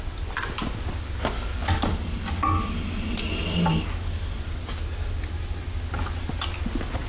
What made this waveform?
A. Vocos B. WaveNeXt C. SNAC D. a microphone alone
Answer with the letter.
D